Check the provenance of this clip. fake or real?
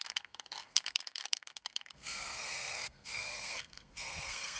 fake